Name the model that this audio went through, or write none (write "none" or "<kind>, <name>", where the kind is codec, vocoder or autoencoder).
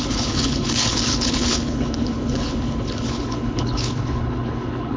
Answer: codec, HILCodec